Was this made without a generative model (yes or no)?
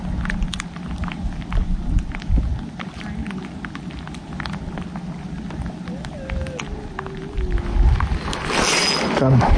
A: yes